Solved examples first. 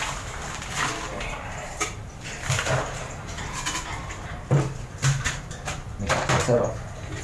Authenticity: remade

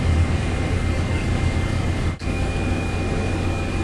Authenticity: remade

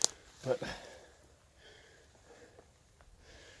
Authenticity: recorded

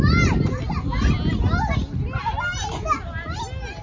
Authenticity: recorded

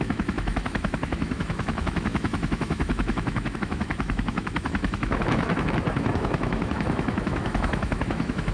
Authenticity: remade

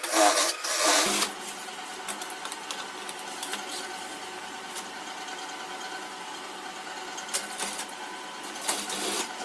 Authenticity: recorded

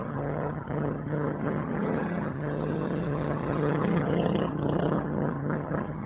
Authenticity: remade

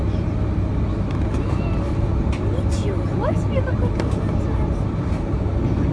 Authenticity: recorded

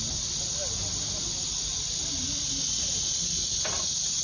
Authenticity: recorded